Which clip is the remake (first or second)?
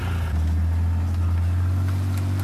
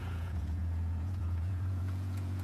second